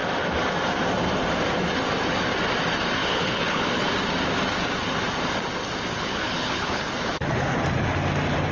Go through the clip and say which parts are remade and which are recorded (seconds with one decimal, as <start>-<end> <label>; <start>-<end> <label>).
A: 0.0-3.0 recorded; 3.0-3.9 remade; 3.9-5.9 recorded; 5.9-7.6 remade; 7.6-8.5 recorded